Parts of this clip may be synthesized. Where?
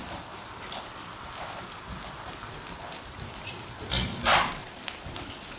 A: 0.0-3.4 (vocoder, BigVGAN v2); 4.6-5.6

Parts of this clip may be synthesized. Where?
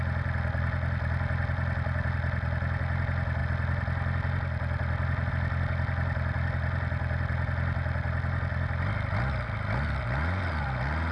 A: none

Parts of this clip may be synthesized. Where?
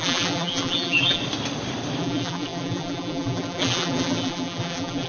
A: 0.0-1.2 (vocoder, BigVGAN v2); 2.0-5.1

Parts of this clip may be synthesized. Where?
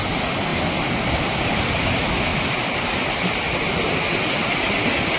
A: 0.5-1.7 (vocoder, BigVGAN v2)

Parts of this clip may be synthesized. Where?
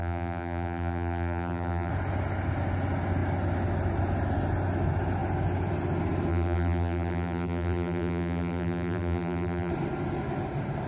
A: 0.0-1.9 (vocoder, BigVGAN v2); 6.3-9.7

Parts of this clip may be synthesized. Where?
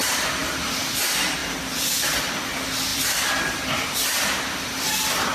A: 2.9-3.4 (vocoder, BigVGAN v2)